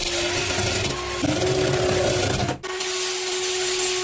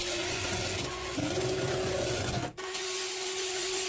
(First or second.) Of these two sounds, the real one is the first